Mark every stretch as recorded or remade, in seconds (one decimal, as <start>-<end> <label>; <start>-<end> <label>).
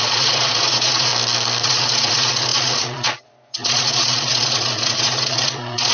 0.0-1.1 remade; 1.1-1.6 recorded; 1.6-5.9 remade